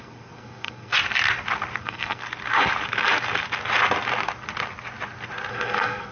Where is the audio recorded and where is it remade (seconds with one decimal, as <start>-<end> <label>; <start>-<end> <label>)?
0.0-0.9 remade; 0.9-1.8 recorded; 1.8-2.2 remade; 2.2-5.5 recorded; 5.5-6.1 remade